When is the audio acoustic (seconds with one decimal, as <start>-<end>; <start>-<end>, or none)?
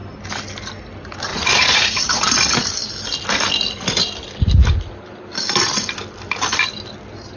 0.0-1.3; 2.2-7.4